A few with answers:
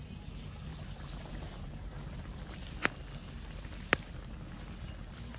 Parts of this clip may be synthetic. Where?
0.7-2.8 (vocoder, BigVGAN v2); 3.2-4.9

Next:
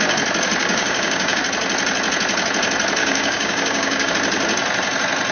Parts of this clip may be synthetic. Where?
0.6-1.4 (codec, DAC); 3.0-4.1